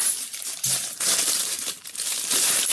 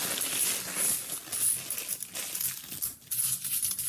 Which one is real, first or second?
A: second